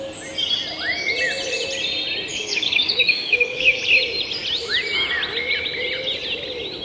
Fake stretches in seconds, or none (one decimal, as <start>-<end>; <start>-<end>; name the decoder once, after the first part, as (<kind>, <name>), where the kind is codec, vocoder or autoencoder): 2.3-3.8 (codec, DAC)